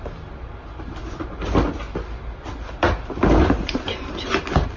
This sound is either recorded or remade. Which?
recorded